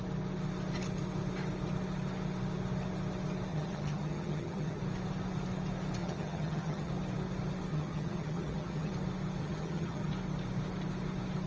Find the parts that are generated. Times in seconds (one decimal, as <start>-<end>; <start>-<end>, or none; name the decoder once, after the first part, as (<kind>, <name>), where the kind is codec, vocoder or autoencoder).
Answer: 3.5-4.8 (vocoder, HiFi-GAN); 6.0-6.9; 7.7-8.9; 9.4-10.1